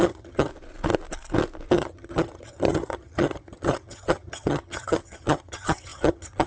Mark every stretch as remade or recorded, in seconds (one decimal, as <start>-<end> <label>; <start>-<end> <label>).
0.0-0.5 remade; 0.5-1.7 recorded; 1.7-6.5 remade